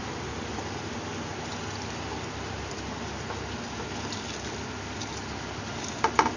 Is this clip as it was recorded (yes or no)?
yes